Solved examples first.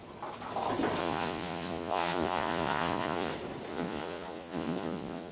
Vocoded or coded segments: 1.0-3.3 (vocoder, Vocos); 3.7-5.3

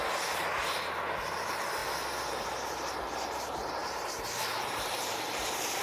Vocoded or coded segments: 3.8-5.8 (vocoder, BigVGAN v2)

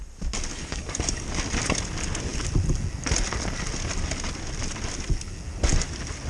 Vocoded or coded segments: 0.5-1.3 (codec, DAC)